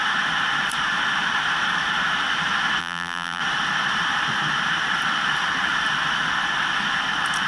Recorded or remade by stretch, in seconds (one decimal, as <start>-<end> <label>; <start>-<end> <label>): 0.0-2.8 recorded; 2.8-3.4 remade; 3.4-7.5 recorded